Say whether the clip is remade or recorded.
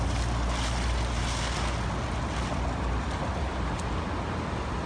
recorded